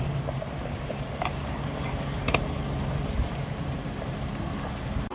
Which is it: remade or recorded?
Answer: remade